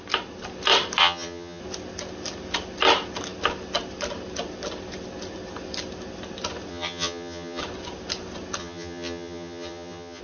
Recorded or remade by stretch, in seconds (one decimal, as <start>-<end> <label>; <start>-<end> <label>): 0.0-1.0 recorded; 1.0-1.6 remade; 1.6-6.7 recorded; 6.7-7.6 remade; 7.6-8.6 recorded; 8.6-10.2 remade